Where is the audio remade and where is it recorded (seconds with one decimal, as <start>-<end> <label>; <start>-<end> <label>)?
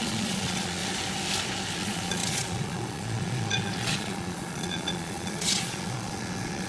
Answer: 0.0-0.8 remade; 0.8-1.7 recorded; 1.7-6.7 remade